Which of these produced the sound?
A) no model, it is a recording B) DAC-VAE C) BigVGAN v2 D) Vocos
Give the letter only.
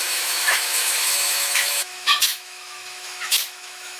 B